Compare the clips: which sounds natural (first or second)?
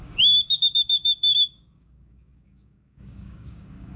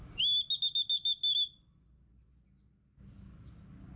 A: second